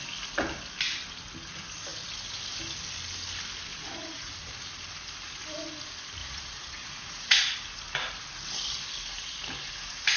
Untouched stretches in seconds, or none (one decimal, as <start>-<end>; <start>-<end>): 0.0-3.7; 4.5-6.2; 7.4-10.2